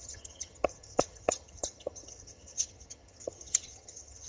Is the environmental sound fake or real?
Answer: fake